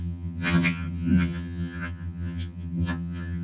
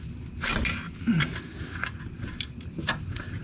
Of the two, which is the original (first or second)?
second